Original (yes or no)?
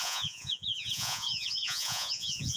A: no